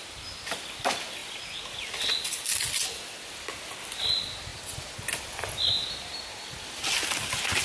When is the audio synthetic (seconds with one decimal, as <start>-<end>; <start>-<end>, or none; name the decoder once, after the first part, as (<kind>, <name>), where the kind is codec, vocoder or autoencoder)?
none